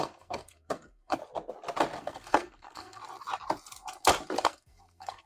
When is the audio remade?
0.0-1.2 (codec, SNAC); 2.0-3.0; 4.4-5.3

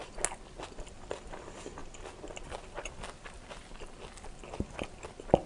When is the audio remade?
none

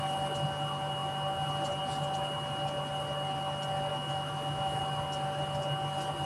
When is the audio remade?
3.9-4.8 (autoencoder, DAC-VAE)

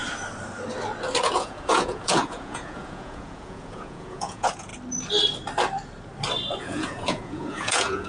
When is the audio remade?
1.2-4.7 (vocoder, Vocos); 6.6-8.1

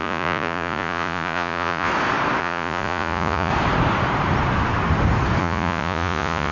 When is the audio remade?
0.0-1.9 (vocoder, Vocos); 2.4-3.5; 5.4-6.5

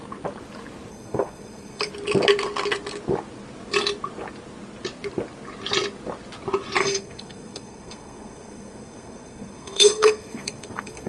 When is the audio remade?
0.9-1.9 (codec, SNAC); 6.8-11.1

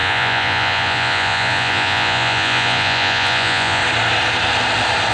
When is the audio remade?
0.0-3.8 (vocoder, Vocos)